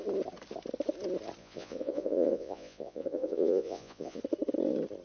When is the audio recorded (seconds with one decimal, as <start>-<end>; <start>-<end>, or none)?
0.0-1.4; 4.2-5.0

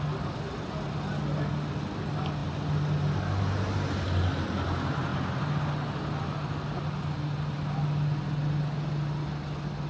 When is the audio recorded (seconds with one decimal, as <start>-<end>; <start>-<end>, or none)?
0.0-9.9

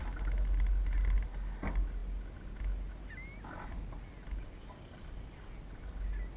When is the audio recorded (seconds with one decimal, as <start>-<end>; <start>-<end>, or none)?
0.0-6.4

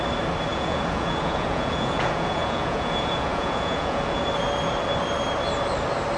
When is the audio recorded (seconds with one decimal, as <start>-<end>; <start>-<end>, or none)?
0.0-0.5; 4.2-6.2

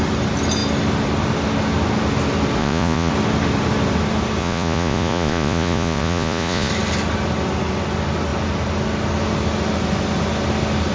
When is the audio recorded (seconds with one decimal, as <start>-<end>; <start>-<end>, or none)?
0.0-2.6; 3.1-4.4; 6.7-10.9

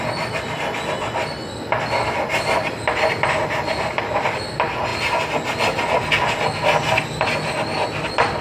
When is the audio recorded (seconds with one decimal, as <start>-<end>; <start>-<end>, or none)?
0.0-8.4

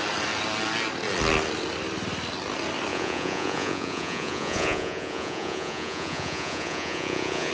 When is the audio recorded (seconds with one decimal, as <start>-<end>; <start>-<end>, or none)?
0.0-2.9